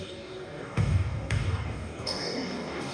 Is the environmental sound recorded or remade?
remade